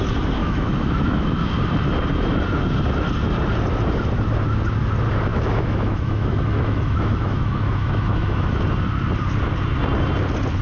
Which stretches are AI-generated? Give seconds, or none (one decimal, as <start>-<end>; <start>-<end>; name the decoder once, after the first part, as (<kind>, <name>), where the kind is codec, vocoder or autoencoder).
0.4-1.4 (autoencoder, DAC-VAE); 5.3-8.5